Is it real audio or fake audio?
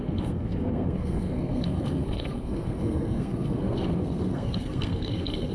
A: fake